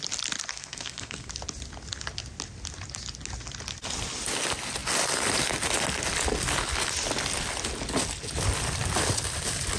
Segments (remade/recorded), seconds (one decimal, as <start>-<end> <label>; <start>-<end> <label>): 0.0-0.5 recorded; 0.5-1.3 remade; 1.3-9.8 recorded

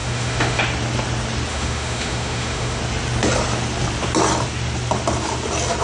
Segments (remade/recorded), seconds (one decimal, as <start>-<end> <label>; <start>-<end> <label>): 0.0-0.6 remade; 0.6-1.5 recorded; 1.5-2.8 remade; 2.8-5.8 recorded

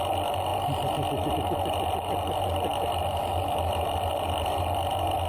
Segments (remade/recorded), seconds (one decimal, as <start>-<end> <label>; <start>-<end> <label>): 0.0-5.3 recorded

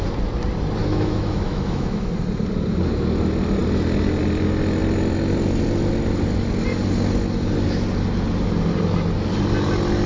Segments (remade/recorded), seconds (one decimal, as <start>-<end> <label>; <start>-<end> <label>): 0.0-0.8 recorded; 0.8-2.1 remade; 2.1-10.1 recorded

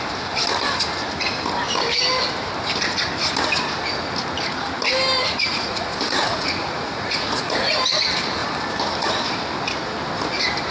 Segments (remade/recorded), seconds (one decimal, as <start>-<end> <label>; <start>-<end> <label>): 0.0-5.2 recorded; 5.2-7.8 remade; 7.8-10.7 recorded

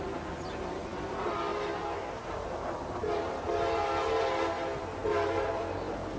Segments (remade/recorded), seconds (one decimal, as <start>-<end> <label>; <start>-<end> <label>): 0.0-6.2 recorded

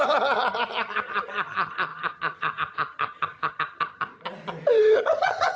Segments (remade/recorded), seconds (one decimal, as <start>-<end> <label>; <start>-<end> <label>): 0.0-4.1 remade; 4.1-4.8 recorded; 4.8-5.6 remade